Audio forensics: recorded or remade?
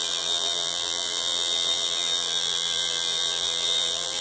remade